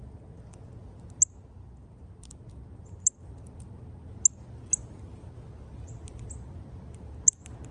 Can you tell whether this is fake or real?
real